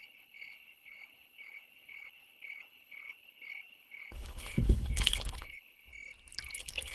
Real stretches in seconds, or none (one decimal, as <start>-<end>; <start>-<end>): 5.9-6.5